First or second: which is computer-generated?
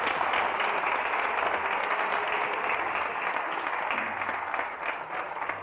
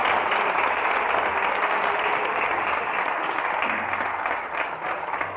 second